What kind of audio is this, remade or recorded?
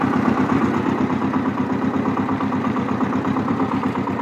recorded